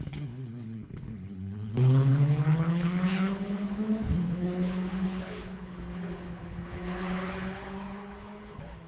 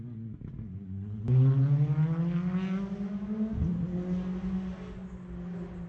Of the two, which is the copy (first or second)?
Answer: first